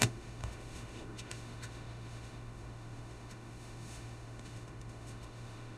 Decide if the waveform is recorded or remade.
remade